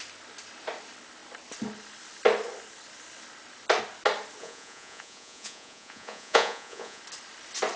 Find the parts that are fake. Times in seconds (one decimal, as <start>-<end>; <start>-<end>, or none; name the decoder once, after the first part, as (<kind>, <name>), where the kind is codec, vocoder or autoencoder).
4.4-7.0 (vocoder, Vocos)